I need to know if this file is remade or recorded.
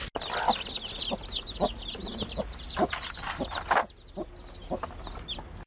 recorded